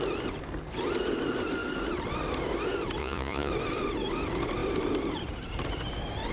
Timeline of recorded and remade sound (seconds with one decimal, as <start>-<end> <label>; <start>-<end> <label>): 0.0-3.0 recorded; 3.0-3.5 remade; 3.5-6.3 recorded